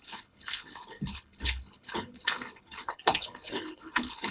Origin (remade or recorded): remade